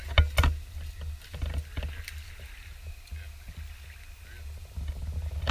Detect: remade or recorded recorded